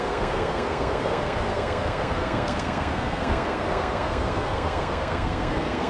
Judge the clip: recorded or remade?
remade